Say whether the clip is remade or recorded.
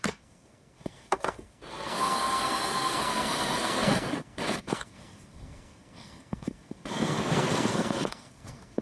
remade